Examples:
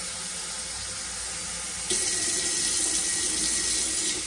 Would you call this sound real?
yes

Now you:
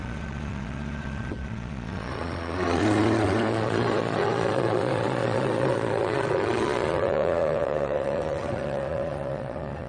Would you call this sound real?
no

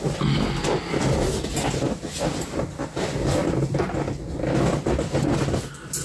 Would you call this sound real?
yes